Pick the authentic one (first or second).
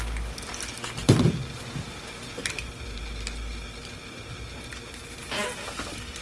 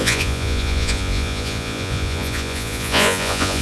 first